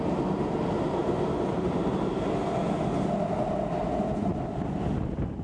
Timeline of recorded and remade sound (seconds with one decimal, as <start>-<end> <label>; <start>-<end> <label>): 0.0-5.4 recorded